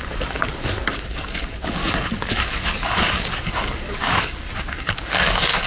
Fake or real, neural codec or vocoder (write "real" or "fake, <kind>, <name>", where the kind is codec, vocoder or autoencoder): fake, codec, DAC